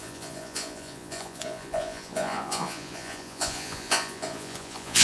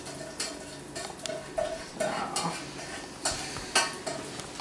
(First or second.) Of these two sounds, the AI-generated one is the first